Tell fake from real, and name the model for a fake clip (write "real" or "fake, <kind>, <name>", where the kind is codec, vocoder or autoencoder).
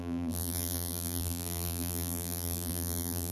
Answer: fake, vocoder, BigVGAN v2